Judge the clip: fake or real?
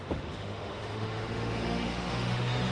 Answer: fake